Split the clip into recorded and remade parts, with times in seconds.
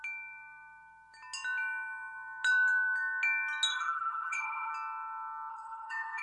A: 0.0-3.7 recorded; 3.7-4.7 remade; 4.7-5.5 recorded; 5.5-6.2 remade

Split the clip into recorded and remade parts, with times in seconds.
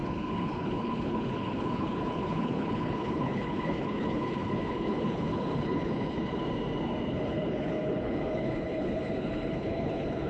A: 0.0-6.4 remade; 6.4-7.1 recorded; 7.1-10.3 remade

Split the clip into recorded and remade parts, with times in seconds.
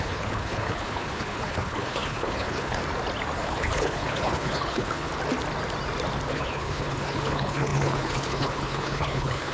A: 0.0-2.8 remade; 2.8-3.4 recorded; 3.4-5.1 remade; 5.1-6.3 recorded; 6.3-9.5 remade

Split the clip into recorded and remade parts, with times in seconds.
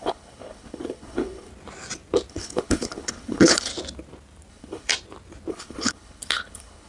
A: 0.0-1.5 remade; 1.5-2.3 recorded; 2.3-3.7 remade; 3.7-4.5 recorded; 4.5-4.9 remade; 4.9-5.5 recorded; 5.5-6.9 remade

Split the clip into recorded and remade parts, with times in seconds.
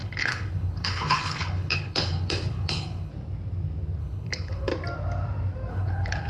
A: 0.0-3.1 remade; 3.1-4.0 recorded; 4.0-4.7 remade; 4.7-5.7 recorded; 5.7-6.3 remade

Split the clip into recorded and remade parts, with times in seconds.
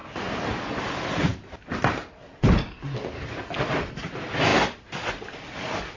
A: 0.0-6.0 recorded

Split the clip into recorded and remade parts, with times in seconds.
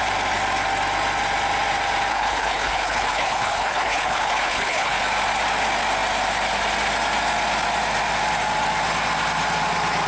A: 0.0-2.1 recorded; 2.1-5.0 remade; 5.0-10.1 recorded